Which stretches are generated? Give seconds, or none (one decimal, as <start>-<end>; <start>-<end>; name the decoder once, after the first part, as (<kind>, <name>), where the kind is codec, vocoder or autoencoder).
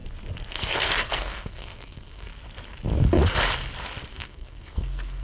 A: 0.5-2.3 (codec, SNAC); 4.1-5.2